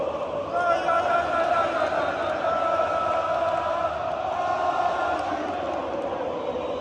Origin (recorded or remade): recorded